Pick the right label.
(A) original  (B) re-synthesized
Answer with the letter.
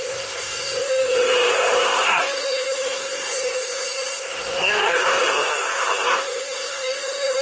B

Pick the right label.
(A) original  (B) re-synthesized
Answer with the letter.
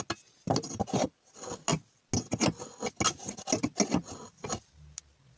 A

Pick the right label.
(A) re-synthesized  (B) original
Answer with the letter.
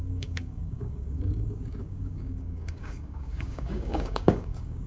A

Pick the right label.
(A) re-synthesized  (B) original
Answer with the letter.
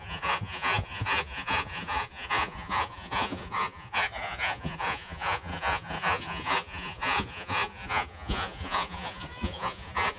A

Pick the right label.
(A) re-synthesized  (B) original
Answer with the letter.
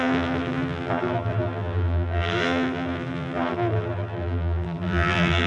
A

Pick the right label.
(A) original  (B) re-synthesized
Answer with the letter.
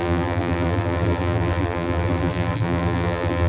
B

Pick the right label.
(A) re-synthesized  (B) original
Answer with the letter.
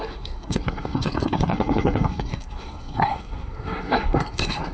A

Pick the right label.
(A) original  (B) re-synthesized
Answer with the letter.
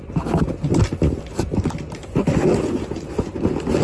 A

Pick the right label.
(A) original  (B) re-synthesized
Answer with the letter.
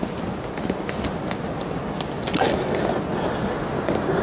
A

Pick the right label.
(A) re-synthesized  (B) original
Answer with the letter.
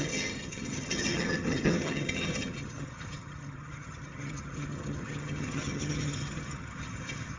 A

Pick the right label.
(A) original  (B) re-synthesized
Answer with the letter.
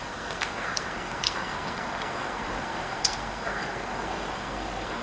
B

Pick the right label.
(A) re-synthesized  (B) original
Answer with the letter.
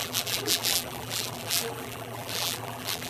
A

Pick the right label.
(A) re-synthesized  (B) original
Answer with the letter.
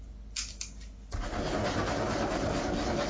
B